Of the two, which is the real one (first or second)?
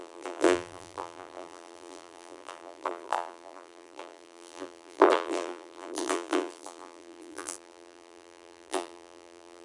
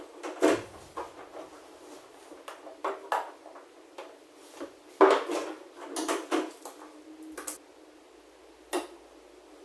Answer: second